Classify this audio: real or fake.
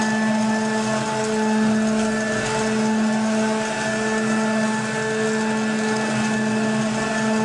real